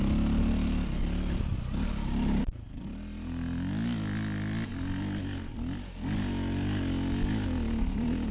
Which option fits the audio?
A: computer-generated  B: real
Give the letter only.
B